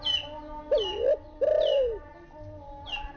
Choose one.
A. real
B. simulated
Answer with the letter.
A